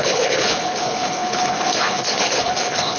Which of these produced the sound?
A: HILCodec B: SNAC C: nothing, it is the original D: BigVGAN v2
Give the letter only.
A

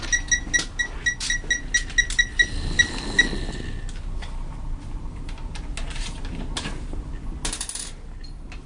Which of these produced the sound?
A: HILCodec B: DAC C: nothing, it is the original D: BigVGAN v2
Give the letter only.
C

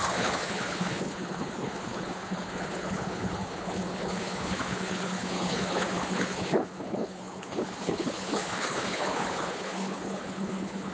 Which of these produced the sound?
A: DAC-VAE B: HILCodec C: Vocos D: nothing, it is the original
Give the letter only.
B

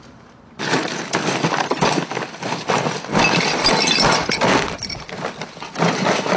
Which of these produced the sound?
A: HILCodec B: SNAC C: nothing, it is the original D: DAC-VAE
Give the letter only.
C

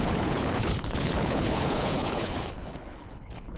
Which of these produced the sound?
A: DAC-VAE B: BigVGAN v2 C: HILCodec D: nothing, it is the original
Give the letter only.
C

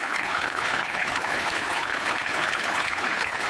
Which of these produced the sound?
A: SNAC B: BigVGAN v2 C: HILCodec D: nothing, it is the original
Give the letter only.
C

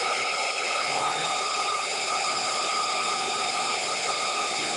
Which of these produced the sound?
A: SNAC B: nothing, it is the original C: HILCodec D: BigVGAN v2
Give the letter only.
C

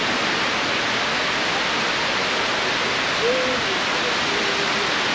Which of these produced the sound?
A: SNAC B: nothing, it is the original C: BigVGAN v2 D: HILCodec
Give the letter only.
B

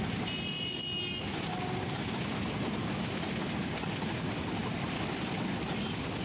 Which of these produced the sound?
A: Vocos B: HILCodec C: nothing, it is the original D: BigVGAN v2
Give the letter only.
C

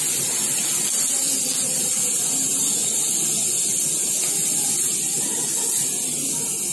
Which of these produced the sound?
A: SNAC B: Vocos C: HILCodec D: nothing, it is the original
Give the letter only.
D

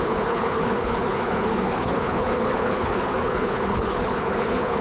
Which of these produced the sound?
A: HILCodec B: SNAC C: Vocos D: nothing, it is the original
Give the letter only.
A